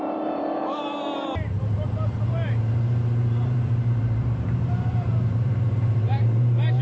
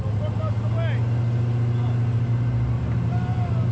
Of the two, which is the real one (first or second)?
second